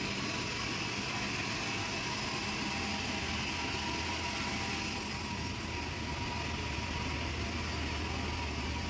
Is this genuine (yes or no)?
yes